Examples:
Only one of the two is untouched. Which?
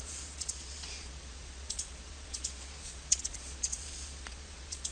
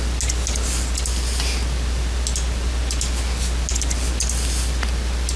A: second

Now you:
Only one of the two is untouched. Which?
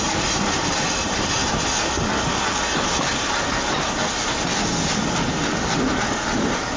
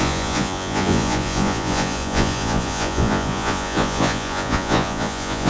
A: first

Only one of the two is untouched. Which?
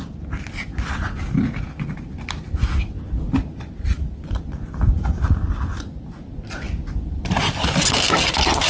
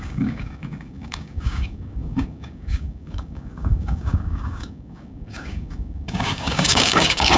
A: first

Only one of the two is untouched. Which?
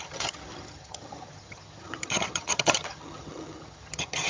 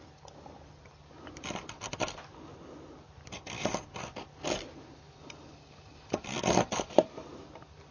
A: second